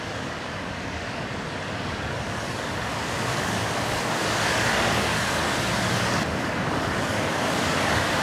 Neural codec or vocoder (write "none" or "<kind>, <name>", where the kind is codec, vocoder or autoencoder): codec, DAC